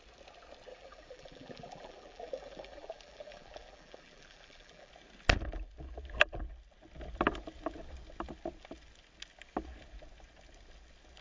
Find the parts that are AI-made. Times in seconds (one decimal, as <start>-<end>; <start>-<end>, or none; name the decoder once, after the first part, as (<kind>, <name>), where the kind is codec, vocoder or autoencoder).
0.7-4.9 (vocoder, BigVGAN v2)